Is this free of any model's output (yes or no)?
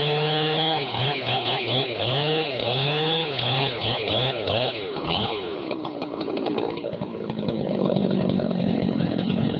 no